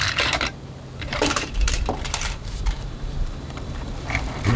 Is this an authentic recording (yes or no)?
no